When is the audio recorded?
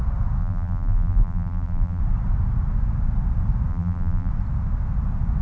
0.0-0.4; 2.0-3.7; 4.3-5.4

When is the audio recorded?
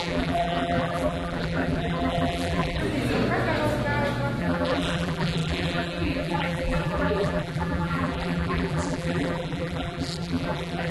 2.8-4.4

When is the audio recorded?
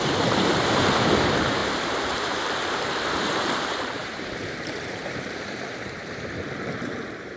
none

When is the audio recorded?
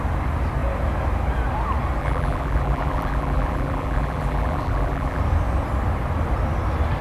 0.0-2.0; 5.2-7.0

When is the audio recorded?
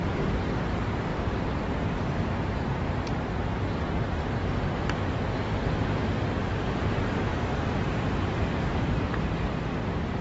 0.0-1.1; 2.9-7.3; 9.6-10.2